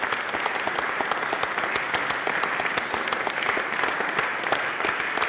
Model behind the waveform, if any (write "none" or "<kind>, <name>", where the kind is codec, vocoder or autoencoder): none